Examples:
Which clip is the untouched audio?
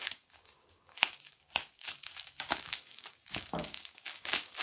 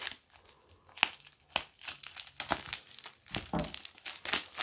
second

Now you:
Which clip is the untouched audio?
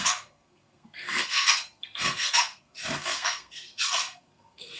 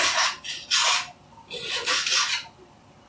second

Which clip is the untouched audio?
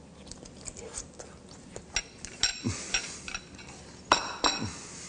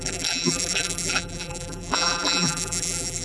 first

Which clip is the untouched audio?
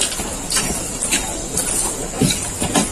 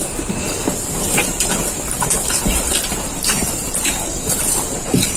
first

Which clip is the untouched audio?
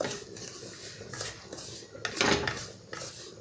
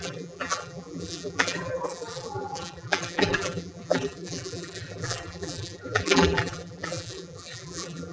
first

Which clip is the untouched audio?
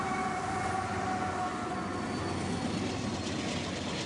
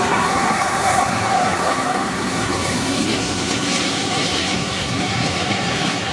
first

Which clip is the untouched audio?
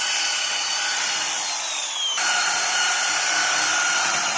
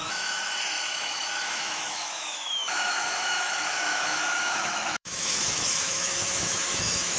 first